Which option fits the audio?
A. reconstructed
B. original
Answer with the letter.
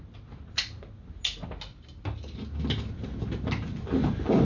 B